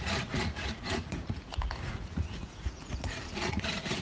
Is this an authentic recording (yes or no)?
no